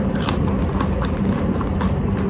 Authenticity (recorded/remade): recorded